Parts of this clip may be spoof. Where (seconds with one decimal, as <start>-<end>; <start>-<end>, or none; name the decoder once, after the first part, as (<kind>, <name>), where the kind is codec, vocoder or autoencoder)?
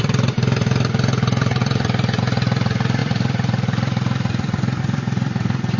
0.0-5.8 (vocoder, BigVGAN v2)